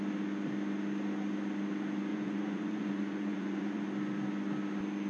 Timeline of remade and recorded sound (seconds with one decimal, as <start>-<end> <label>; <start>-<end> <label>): 0.0-2.1 recorded; 2.1-3.8 remade; 3.8-5.1 recorded